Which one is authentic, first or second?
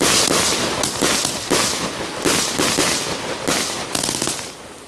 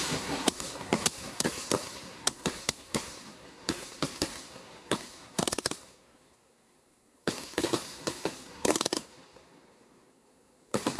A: first